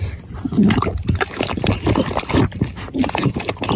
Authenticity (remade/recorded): recorded